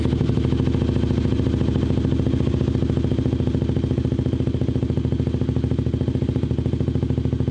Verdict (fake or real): real